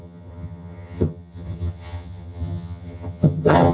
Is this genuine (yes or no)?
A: no